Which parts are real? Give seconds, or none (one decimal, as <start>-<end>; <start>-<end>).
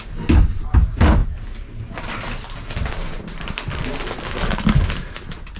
0.0-5.6